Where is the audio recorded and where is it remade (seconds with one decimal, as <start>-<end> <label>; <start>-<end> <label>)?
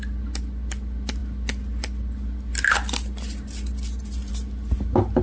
0.0-5.2 recorded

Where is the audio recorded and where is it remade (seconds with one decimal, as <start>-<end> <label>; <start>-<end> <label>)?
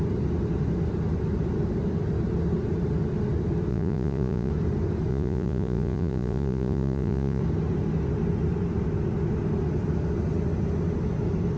0.0-3.7 recorded; 3.7-4.5 remade; 4.5-5.1 recorded; 5.1-7.4 remade; 7.4-11.6 recorded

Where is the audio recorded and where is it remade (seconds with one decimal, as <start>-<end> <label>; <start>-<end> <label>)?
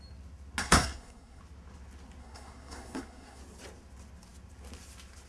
0.0-0.6 recorded; 0.6-1.4 remade; 1.4-2.2 recorded; 2.2-3.4 remade; 3.4-5.3 recorded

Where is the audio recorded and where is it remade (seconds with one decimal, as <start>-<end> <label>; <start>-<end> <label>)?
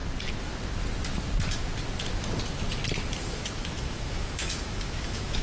0.0-3.2 recorded; 3.2-5.4 remade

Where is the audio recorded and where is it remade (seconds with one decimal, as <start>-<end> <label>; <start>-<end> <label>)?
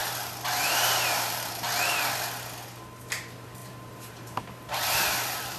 0.0-1.7 remade; 1.7-3.6 recorded; 3.6-5.6 remade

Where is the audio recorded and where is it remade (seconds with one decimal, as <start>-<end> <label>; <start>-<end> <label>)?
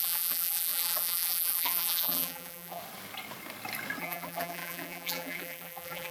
0.0-2.8 remade; 2.8-4.0 recorded; 4.0-6.1 remade